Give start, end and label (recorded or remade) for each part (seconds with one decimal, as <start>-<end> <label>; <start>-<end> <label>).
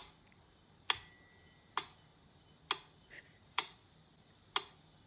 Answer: 0.0-3.0 recorded; 3.0-3.8 remade; 3.8-5.1 recorded